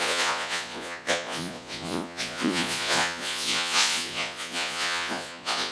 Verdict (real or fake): fake